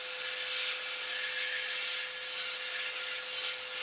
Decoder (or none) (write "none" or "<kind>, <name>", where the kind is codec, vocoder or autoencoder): none